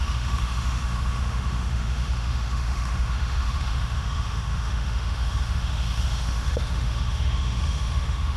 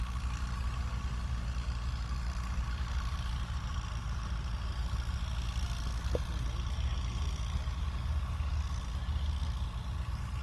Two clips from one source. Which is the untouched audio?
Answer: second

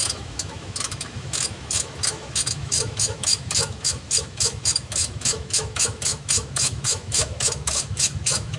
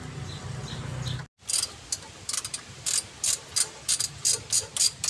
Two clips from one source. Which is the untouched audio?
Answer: second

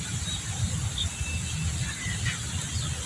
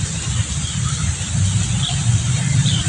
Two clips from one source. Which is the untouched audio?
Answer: first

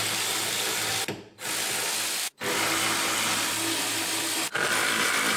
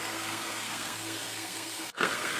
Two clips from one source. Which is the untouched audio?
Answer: first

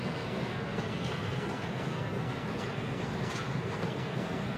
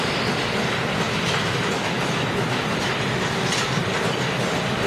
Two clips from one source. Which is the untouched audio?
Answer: second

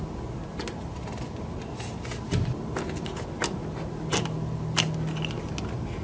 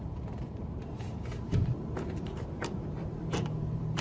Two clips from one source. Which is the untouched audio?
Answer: first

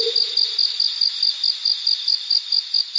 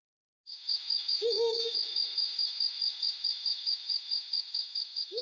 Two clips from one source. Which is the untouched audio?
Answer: first